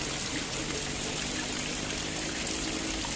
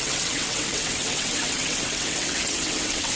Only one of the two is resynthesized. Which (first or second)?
second